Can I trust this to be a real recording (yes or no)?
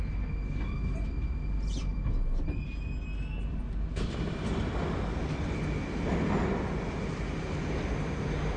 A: yes